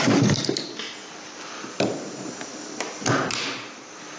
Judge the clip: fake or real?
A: real